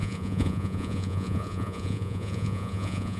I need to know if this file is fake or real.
fake